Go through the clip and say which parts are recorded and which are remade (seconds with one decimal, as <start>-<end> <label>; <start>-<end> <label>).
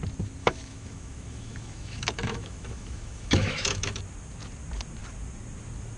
0.0-0.4 recorded; 0.4-4.0 remade; 4.0-6.0 recorded